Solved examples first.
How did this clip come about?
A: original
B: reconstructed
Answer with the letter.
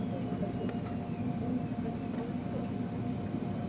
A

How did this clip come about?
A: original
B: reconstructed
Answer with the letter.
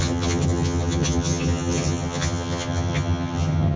B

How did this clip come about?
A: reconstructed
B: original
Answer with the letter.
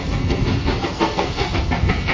A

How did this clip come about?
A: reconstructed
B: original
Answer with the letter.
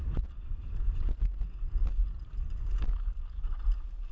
B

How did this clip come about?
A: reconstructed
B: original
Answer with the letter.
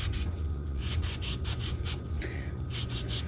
A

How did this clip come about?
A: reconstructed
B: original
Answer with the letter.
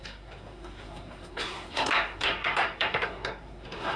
A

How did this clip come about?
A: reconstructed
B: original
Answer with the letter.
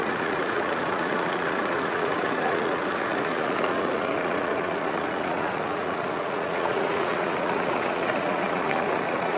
A